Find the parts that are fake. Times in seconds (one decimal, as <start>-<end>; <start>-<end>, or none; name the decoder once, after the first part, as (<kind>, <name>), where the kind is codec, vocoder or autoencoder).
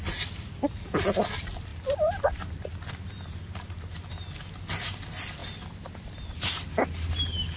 none